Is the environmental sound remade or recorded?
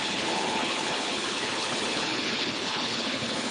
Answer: remade